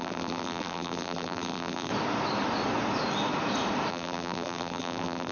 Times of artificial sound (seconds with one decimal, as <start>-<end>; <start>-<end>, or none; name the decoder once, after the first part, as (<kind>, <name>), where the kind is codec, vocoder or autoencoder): 0.0-1.9 (vocoder, BigVGAN v2); 3.9-5.3